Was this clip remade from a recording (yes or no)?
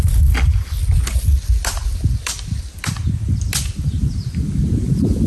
no